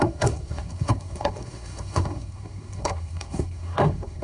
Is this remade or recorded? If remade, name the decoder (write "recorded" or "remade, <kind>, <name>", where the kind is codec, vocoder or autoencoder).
remade, codec, SNAC